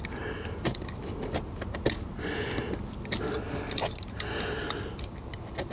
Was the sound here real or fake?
real